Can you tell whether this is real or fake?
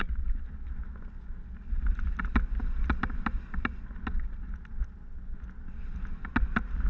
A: real